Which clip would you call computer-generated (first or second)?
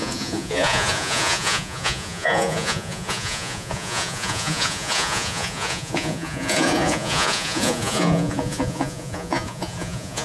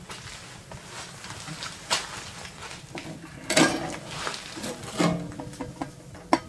first